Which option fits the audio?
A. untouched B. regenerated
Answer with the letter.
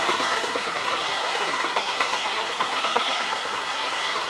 B